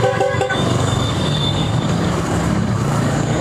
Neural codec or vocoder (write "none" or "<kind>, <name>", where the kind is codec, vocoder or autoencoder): codec, DAC